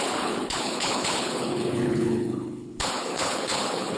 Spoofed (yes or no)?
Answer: yes